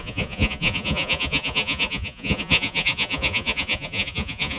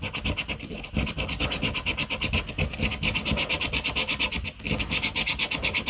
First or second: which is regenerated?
first